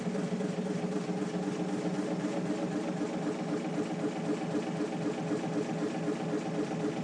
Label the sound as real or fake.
real